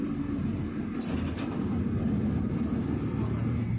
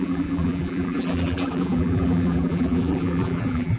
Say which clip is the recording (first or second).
first